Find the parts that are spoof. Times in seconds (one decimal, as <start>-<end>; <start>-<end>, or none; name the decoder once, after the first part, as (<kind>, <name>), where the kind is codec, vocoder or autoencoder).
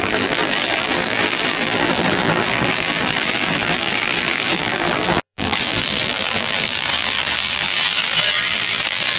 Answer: 0.0-9.2 (vocoder, BigVGAN v2)